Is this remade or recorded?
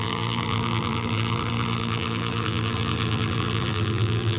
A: remade